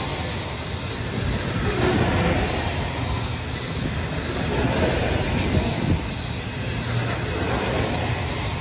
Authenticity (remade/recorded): recorded